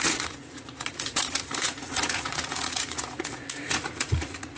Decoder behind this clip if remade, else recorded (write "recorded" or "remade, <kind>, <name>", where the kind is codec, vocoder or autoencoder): remade, vocoder, Vocos